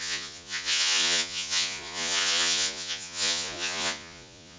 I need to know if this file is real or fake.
fake